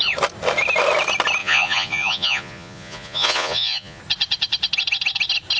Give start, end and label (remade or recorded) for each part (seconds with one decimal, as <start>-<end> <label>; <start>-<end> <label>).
0.0-1.4 recorded; 1.4-4.0 remade; 4.0-5.6 recorded